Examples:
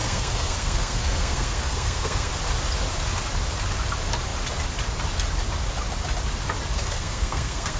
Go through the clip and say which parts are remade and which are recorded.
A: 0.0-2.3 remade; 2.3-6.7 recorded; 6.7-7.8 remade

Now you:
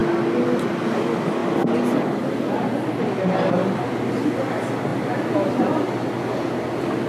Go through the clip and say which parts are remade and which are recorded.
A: 0.0-7.1 recorded

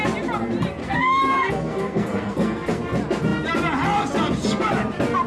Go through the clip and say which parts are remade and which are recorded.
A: 0.0-0.8 recorded; 0.8-2.8 remade; 2.8-5.3 recorded

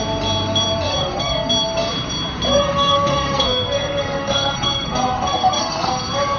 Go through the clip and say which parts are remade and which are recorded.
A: 0.0-0.9 recorded; 0.9-1.5 remade; 1.5-2.5 recorded; 2.5-5.9 remade; 5.9-6.4 recorded

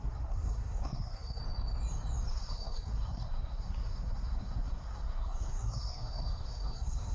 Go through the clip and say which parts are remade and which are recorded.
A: 0.0-1.4 remade; 1.4-2.3 recorded; 2.3-7.1 remade